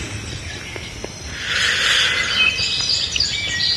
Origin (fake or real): real